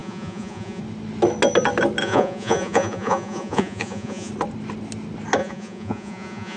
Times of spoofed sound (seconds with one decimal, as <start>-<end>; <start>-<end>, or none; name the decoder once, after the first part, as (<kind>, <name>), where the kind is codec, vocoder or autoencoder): 0.0-0.8 (vocoder, Vocos); 2.0-4.3; 5.4-6.6